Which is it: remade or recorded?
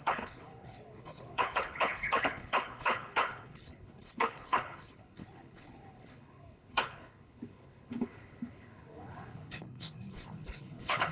remade